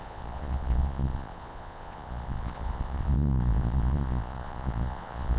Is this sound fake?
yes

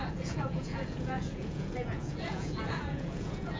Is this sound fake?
yes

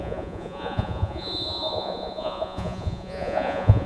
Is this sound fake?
yes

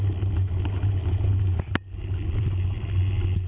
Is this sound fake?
no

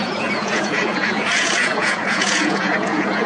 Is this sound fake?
yes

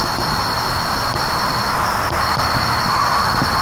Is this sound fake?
no